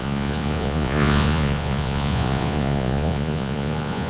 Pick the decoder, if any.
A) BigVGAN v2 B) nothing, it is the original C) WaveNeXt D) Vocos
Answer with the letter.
D